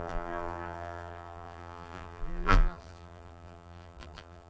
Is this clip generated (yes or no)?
yes